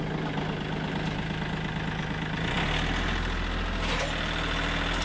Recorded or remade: recorded